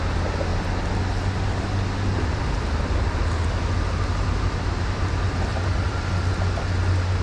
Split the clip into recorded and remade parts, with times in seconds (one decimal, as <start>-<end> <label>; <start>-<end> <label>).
0.0-5.5 recorded; 5.5-6.3 remade; 6.3-7.2 recorded